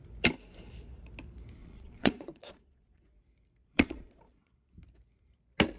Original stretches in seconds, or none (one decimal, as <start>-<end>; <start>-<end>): 0.0-1.6; 3.2-3.6; 4.8-5.8